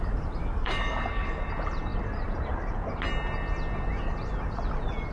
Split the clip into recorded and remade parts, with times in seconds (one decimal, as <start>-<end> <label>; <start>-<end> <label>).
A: 0.0-0.4 recorded; 0.4-1.5 remade; 1.5-5.1 recorded